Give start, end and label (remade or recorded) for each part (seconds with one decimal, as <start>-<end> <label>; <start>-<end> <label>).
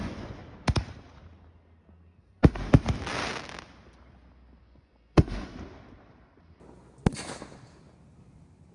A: 0.0-0.4 remade; 0.4-4.6 recorded; 4.6-5.5 remade; 5.5-8.7 recorded